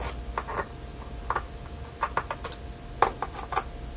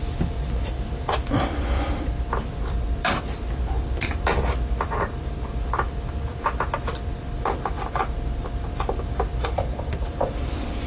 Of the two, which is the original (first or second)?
first